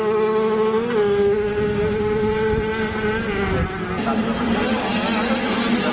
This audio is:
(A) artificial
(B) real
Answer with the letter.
B